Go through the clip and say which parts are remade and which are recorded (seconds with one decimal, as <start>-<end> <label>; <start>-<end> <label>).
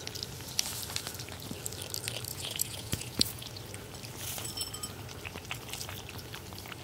0.0-2.3 recorded; 2.3-3.5 remade; 3.5-6.8 recorded